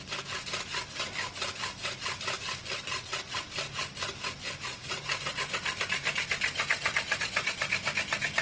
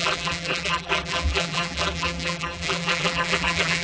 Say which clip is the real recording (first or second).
first